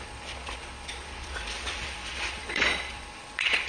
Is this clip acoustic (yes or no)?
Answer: no